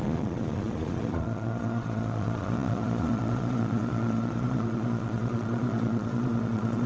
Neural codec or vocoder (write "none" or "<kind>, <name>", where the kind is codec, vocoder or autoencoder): vocoder, Vocos